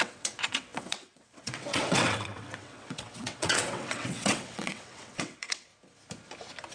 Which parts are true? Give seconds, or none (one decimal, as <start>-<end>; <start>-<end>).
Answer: 5.7-6.7